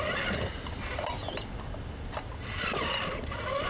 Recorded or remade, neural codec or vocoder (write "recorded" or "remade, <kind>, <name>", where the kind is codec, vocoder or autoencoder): recorded